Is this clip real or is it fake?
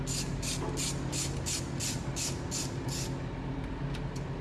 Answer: real